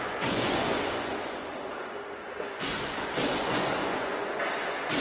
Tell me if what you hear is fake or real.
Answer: fake